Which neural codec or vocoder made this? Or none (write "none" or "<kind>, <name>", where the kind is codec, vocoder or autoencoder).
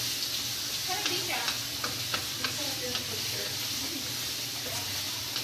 none